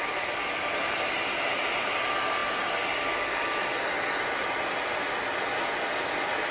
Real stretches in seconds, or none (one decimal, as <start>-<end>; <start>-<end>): 0.0-6.5